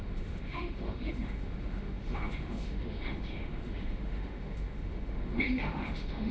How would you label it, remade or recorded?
remade